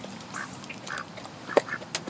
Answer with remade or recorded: recorded